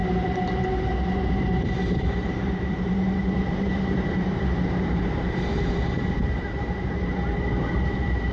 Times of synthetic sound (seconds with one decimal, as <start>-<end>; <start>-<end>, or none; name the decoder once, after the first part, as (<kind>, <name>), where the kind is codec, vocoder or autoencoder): 0.0-8.3 (vocoder, BigVGAN v2)